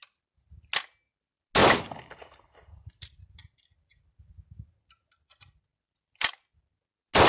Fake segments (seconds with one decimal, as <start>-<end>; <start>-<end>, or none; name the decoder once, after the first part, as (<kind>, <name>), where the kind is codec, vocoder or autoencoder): 1.6-4.3 (vocoder, BigVGAN v2); 5.7-6.3